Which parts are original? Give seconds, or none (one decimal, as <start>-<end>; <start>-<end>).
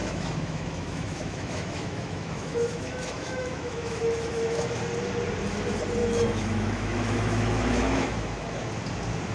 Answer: 4.8-6.0; 8.7-9.3